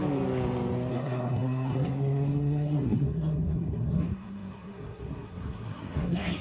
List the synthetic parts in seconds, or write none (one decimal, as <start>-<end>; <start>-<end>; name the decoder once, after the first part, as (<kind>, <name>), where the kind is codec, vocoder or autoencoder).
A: 0.9-6.4 (codec, SNAC)